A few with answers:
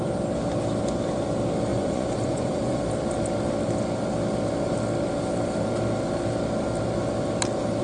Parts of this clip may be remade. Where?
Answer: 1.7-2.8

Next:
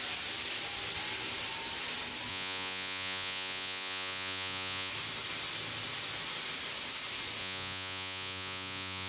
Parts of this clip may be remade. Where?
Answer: 2.3-4.9; 7.4-9.1

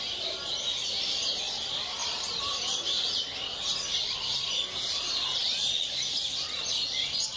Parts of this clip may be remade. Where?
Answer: 2.0-3.2

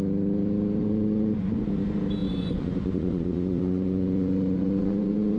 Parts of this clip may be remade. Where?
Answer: 0.8-1.7; 2.2-5.4

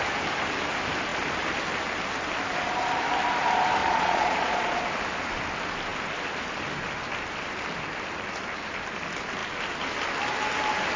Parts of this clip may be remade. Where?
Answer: 3.8-4.8

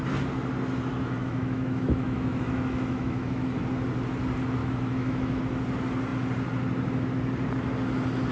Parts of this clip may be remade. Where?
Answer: 0.9-3.6; 4.6-5.4

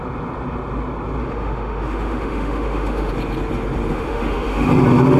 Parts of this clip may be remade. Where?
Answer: 1.2-3.1; 3.9-4.7